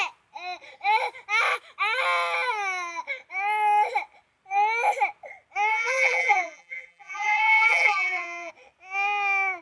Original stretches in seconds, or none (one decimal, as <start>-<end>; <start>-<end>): 0.0-5.7; 8.5-9.6